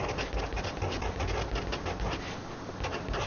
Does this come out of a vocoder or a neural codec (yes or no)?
no